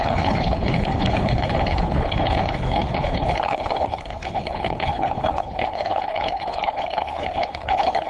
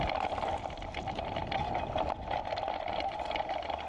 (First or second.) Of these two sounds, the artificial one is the first